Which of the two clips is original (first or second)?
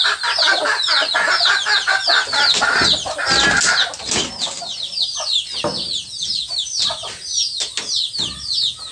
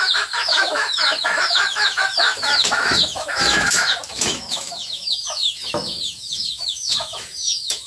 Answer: first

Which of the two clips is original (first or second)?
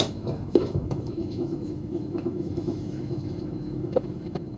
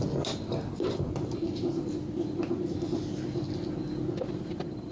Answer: second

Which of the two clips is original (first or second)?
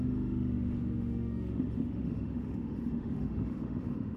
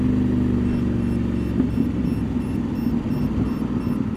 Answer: second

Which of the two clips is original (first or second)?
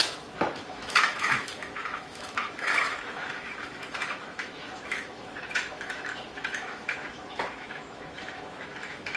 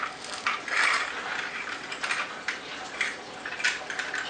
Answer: second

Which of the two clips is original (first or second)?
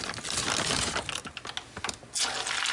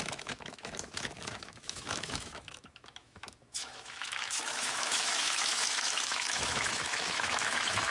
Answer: first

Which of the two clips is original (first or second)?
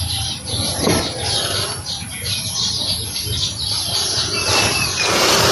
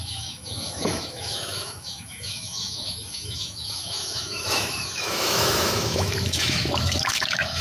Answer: first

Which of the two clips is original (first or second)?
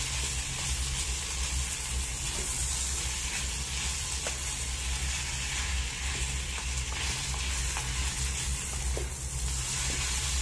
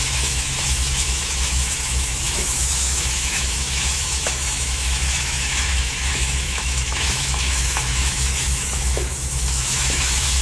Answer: first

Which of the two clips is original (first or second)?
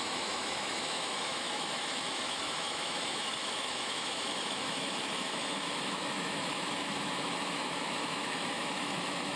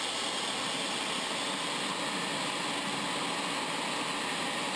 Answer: second